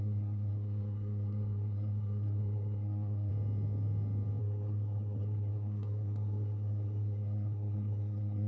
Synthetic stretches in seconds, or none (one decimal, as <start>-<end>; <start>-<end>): 0.0-3.3; 4.4-8.5